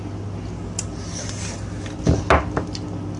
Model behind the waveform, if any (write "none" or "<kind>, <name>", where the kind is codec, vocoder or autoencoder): none